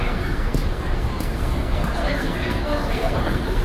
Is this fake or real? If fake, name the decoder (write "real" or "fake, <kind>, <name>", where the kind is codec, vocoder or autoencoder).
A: fake, codec, SNAC